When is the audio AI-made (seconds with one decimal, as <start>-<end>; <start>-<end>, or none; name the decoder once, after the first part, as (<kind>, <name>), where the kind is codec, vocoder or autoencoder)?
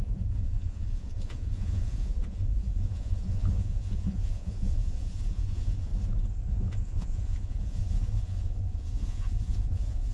0.0-5.9 (vocoder, Vocos); 6.5-10.1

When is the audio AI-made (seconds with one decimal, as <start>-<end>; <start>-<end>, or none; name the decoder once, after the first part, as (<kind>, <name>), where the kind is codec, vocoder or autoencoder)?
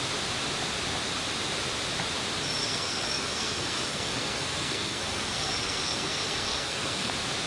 2.6-7.1 (codec, SNAC)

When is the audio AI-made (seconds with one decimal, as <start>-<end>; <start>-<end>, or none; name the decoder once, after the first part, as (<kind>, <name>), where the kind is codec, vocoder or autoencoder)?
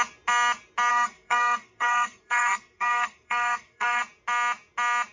0.9-4.0 (codec, SNAC)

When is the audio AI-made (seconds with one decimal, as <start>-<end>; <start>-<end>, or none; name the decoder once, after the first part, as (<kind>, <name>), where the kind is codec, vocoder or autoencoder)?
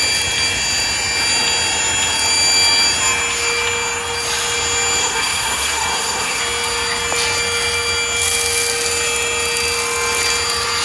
5.0-6.4 (codec, SNAC)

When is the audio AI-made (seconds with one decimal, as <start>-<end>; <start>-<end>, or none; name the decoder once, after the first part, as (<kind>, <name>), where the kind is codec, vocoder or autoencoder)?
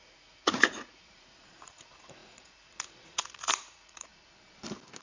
0.0-4.1 (vocoder, Vocos)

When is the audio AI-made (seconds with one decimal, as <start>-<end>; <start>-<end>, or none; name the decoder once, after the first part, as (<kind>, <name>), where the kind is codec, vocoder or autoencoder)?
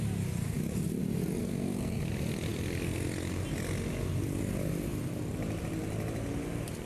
1.4-2.1 (codec, SNAC)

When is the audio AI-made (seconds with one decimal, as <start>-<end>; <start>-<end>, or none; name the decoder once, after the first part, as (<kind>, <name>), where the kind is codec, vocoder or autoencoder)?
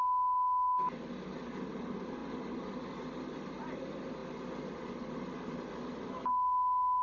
none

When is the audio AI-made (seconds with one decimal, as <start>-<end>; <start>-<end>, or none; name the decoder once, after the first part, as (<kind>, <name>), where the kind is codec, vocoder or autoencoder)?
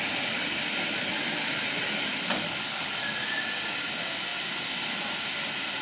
2.1-2.9 (codec, DAC)